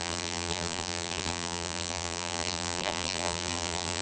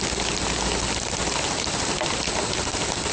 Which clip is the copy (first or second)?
first